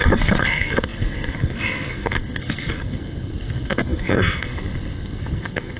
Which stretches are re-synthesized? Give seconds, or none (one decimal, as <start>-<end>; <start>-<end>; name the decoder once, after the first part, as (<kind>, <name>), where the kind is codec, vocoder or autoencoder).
0.0-5.8 (codec, SNAC)